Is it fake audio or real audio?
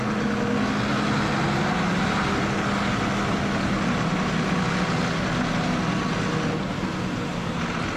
real